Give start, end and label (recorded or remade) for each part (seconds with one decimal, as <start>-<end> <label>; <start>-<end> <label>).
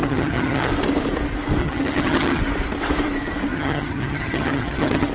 0.0-0.7 remade; 0.7-1.6 recorded; 1.6-2.4 remade; 2.4-3.5 recorded; 3.5-5.1 remade